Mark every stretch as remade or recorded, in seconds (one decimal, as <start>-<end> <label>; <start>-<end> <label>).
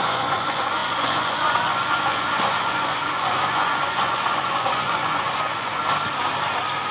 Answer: 0.0-5.8 remade; 5.8-6.9 recorded